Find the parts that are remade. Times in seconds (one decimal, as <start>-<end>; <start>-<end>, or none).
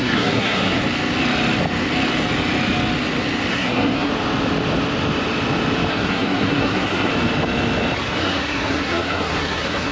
0.0-0.8; 3.5-4.1; 5.9-7.1; 8.0-9.9